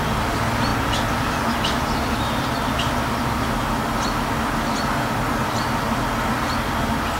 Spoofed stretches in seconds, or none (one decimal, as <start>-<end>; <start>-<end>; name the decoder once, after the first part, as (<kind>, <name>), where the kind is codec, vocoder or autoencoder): none